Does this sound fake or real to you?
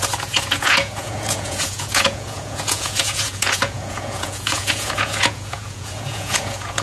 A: fake